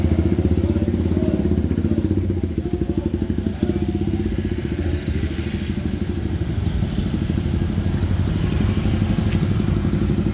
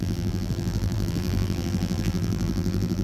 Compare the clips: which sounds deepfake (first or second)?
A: second